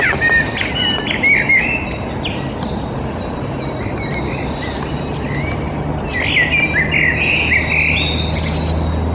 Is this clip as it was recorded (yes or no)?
yes